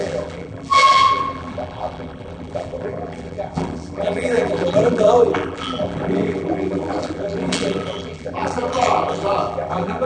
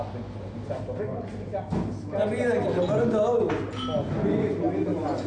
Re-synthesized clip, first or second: first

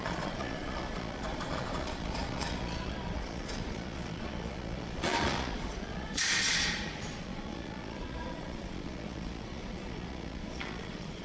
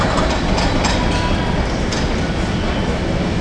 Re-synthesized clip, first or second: first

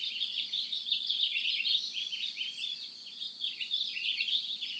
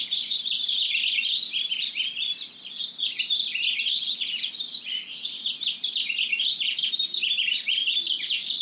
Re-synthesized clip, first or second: first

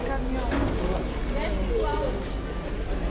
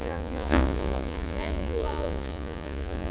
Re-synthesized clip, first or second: second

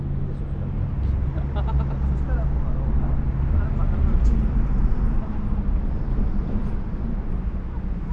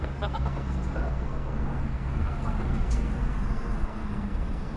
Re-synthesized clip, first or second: second